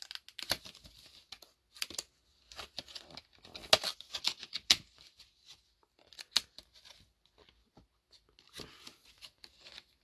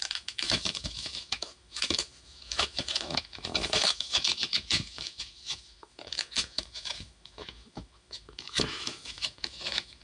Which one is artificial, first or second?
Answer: second